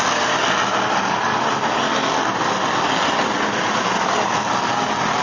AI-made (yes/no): no